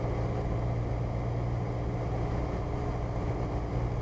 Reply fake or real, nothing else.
real